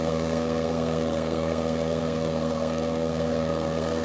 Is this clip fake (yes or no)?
yes